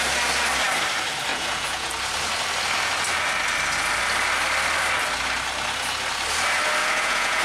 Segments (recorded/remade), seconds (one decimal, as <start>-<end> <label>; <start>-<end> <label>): 0.0-1.3 recorded; 1.3-1.9 remade; 1.9-6.8 recorded; 6.8-7.4 remade